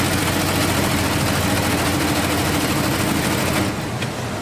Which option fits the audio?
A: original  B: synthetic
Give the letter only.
A